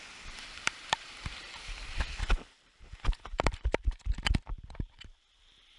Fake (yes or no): yes